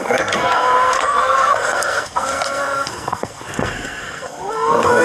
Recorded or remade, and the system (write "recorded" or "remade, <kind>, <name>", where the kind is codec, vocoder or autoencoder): remade, codec, SNAC